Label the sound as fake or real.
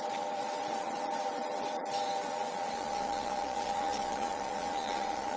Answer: fake